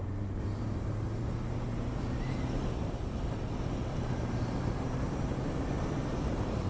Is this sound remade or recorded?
remade